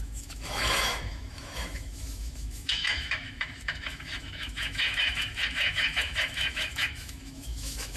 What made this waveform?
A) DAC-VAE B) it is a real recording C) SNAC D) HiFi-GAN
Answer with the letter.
A